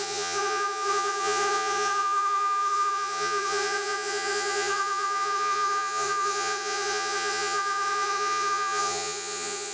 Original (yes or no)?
no